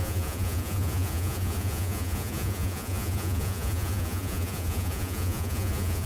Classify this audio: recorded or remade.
remade